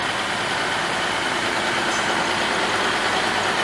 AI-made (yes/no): no